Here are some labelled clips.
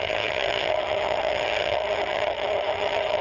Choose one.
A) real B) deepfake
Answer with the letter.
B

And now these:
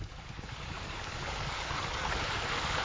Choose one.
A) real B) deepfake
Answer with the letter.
B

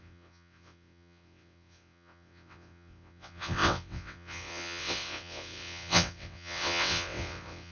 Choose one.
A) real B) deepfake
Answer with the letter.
B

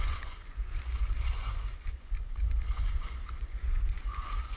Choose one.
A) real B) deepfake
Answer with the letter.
B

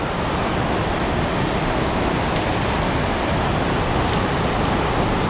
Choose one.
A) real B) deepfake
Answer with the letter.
A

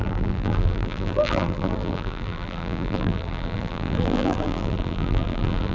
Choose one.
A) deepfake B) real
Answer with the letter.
A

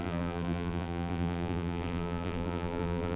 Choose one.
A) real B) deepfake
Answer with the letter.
B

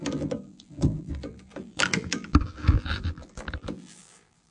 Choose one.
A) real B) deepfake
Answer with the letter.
B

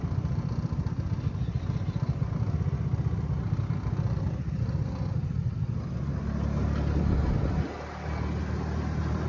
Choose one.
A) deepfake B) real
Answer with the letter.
B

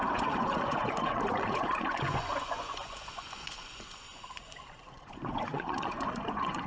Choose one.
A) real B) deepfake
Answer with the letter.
B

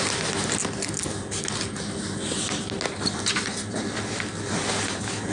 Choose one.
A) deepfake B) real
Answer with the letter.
B